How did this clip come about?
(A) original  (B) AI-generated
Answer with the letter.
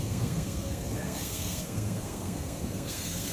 B